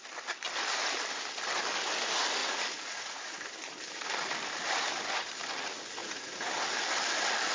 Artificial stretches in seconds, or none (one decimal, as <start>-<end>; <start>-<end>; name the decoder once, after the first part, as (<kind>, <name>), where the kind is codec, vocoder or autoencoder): 2.4-3.3 (vocoder, Vocos); 6.0-6.5

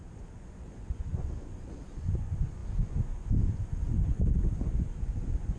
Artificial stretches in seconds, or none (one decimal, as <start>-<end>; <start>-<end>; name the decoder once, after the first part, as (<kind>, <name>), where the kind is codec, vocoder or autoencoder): 0.0-5.6 (vocoder, Vocos)